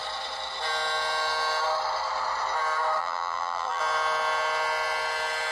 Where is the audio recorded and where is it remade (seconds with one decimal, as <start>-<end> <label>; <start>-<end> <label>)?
0.0-3.0 recorded; 3.0-3.8 remade; 3.8-5.5 recorded